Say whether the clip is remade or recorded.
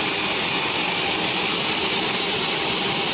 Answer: recorded